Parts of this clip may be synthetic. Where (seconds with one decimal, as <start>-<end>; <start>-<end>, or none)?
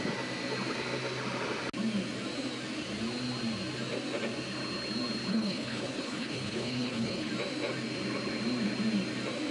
5.3-7.3